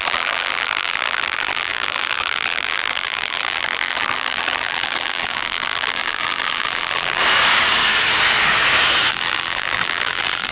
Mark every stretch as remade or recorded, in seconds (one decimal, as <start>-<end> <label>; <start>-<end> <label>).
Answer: 0.0-7.2 remade; 7.2-9.1 recorded; 9.1-10.5 remade